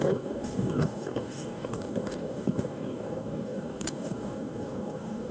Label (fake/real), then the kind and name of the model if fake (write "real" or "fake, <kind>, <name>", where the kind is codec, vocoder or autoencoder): fake, codec, DAC